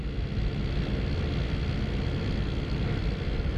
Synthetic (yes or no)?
no